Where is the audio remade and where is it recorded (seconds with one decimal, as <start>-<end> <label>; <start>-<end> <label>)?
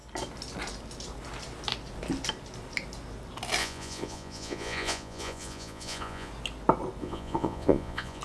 0.0-3.6 recorded; 3.6-6.3 remade; 6.3-7.0 recorded; 7.0-8.2 remade